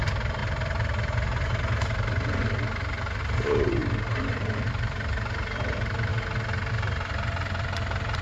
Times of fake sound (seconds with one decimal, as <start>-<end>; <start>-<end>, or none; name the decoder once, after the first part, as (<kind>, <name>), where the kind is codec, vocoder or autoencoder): 0.0-0.4 (vocoder, BigVGAN v2); 3.2-3.8; 4.7-6.1; 6.7-8.2